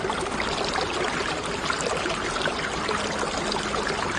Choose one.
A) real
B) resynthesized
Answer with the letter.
A